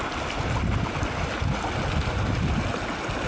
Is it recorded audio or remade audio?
recorded